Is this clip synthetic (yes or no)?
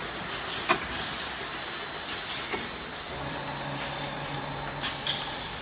no